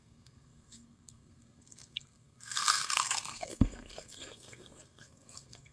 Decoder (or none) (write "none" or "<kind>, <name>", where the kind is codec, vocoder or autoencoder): codec, SNAC